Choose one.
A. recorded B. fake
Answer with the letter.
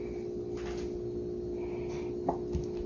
A